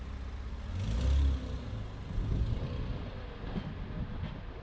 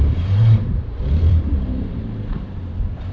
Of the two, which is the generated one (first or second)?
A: second